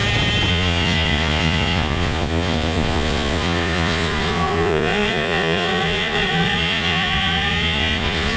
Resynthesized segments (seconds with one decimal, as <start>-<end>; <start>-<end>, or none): 0.5-8.4